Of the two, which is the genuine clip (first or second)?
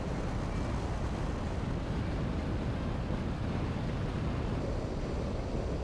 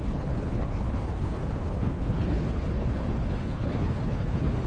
first